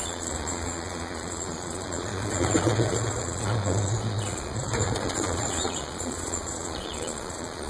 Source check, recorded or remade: remade